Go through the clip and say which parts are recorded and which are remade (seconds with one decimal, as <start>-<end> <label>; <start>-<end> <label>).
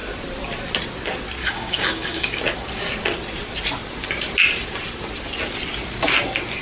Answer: 0.0-1.4 recorded; 1.4-2.4 remade; 2.4-6.6 recorded